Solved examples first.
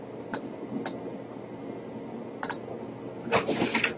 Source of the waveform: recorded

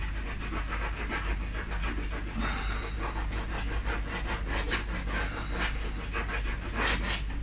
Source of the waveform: recorded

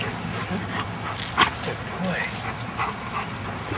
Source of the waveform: recorded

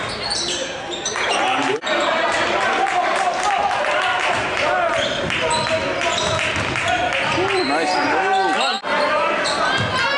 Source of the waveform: recorded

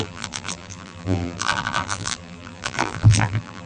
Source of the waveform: remade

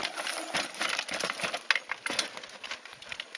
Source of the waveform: recorded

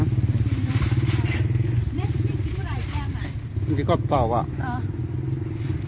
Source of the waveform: remade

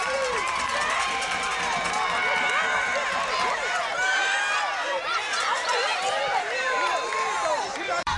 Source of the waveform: remade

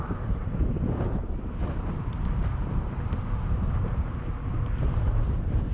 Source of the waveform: remade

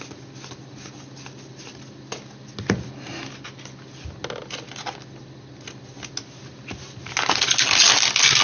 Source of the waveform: recorded